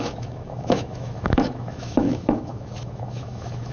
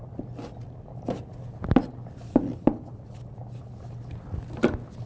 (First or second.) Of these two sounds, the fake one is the first